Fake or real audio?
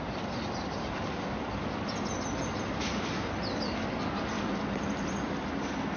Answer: real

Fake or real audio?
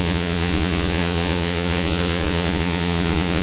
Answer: fake